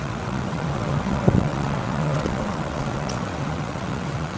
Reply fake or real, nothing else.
fake